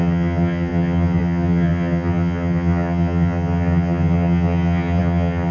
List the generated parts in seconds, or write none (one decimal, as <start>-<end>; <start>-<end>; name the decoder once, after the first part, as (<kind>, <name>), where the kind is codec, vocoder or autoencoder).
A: 0.0-5.5 (vocoder, HiFi-GAN)